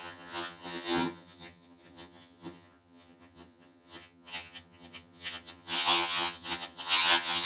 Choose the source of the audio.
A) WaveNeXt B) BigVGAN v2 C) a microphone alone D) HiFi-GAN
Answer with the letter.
D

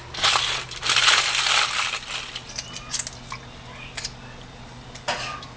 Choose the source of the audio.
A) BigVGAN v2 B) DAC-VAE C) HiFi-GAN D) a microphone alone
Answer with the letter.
D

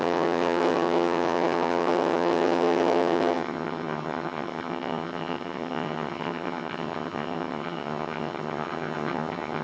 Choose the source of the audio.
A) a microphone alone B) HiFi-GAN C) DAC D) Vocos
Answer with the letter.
B